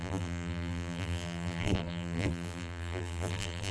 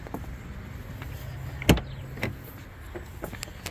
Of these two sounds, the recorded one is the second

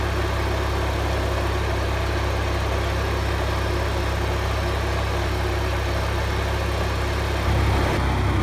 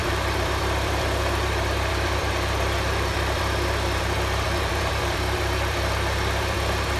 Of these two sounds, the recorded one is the first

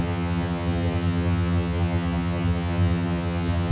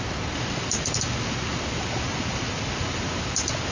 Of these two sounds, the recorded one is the second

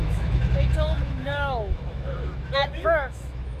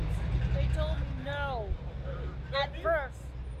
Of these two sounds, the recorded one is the second